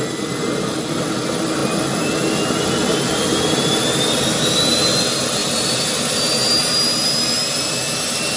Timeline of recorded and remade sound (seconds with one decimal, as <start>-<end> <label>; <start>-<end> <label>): 0.0-8.4 recorded